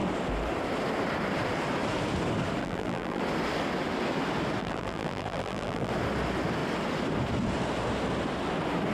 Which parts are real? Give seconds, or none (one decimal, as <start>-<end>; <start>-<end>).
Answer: 0.0-2.6; 3.2-4.6; 5.9-8.9